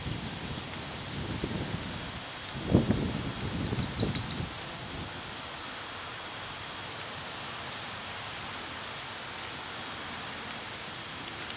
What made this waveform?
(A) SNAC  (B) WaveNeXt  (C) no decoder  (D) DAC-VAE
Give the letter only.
C